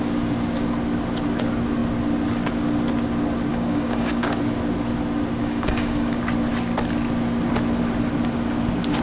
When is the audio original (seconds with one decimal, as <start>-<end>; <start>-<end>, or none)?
0.0-3.5; 4.4-5.4; 6.2-9.0